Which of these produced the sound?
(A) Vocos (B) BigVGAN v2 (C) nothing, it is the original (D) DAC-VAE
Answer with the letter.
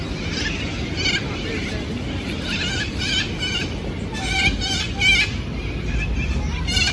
C